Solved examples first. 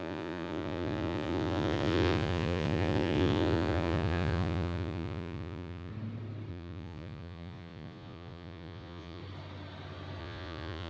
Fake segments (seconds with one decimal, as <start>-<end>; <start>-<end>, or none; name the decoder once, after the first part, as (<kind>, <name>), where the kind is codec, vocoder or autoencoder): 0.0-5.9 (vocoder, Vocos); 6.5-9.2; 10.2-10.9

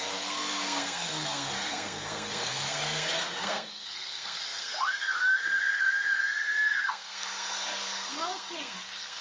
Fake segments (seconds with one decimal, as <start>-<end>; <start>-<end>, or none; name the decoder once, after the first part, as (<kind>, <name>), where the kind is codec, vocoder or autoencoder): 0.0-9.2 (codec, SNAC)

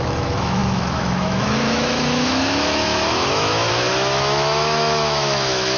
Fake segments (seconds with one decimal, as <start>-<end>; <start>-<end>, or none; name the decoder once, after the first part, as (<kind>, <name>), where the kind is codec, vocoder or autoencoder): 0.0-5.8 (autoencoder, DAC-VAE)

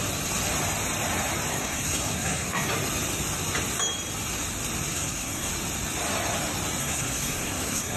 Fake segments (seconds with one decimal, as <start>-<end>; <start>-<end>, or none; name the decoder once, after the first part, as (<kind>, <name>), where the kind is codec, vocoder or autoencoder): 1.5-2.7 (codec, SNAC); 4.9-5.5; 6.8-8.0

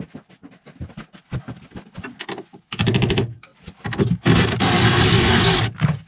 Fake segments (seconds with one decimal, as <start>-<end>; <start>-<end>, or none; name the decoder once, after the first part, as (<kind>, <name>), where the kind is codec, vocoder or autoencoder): none

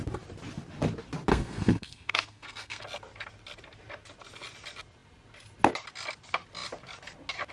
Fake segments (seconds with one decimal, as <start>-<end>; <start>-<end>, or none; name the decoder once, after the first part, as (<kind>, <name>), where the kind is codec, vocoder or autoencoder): 1.3-2.8 (codec, SNAC)

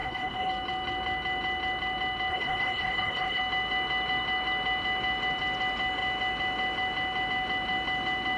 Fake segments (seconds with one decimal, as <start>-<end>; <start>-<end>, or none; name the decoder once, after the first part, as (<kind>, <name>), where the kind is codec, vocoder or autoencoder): 0.0-0.5 (codec, HILCodec); 2.3-3.4

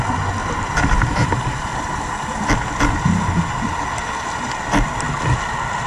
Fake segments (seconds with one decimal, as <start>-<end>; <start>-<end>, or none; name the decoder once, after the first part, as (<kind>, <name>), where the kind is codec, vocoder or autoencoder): 0.4-3.4 (vocoder, BigVGAN v2); 4.0-4.9